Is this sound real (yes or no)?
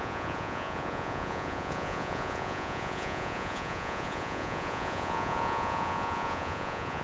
no